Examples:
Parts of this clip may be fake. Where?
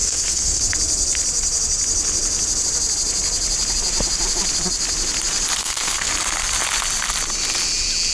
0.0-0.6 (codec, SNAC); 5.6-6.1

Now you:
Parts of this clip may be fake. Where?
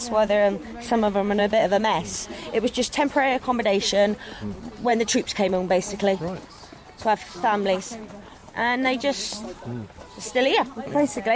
4.9-5.5 (vocoder, BigVGAN v2); 8.4-10.0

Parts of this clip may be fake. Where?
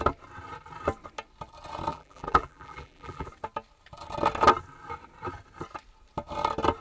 1.9-3.3 (vocoder, BigVGAN v2)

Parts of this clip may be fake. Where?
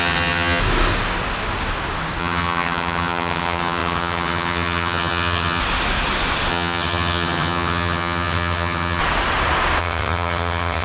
0.0-0.6 (vocoder, HiFi-GAN); 2.2-5.6; 6.5-9.0; 9.8-10.8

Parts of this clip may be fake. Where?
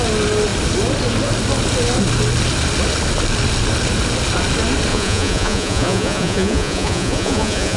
4.9-7.8 (vocoder, Vocos)